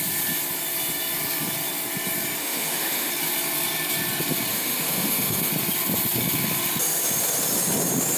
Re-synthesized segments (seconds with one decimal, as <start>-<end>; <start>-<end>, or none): 2.4-3.1; 4.5-5.5

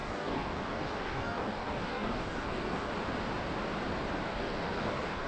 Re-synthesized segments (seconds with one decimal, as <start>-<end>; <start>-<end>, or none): 0.0-2.9; 4.3-5.3

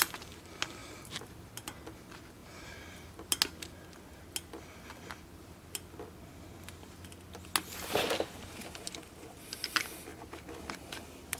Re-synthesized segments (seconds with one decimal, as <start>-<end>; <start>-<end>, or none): 0.8-1.5; 2.4-3.1; 10.1-11.4

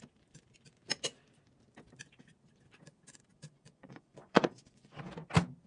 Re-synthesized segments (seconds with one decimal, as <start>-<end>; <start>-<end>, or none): 3.3-5.1

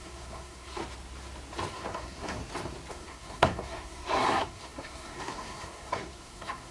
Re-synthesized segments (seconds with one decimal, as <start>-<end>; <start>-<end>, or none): 0.0-0.8; 1.7-2.4; 2.9-6.7